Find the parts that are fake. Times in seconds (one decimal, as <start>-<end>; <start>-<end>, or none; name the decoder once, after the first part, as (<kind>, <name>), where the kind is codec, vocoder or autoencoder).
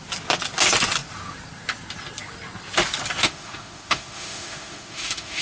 3.2-5.4 (autoencoder, DAC-VAE)